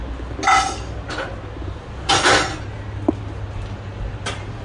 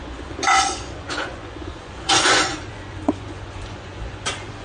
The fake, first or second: second